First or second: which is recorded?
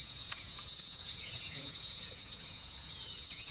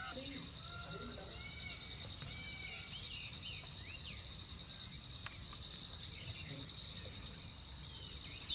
second